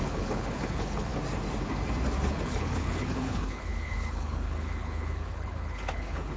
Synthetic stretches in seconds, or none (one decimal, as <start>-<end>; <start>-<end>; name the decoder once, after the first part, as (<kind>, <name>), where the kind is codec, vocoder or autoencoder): 0.0-1.1 (codec, HILCodec); 2.3-6.4